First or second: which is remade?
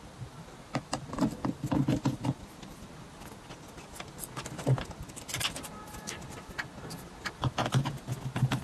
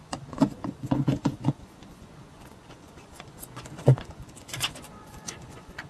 second